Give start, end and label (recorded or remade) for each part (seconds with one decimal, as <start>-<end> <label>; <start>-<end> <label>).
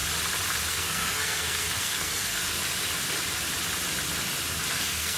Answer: 0.0-0.7 recorded; 0.7-2.6 remade; 2.6-4.7 recorded; 4.7-5.2 remade